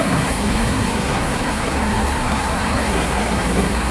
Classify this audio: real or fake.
fake